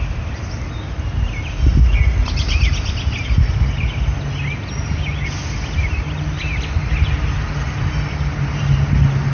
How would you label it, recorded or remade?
recorded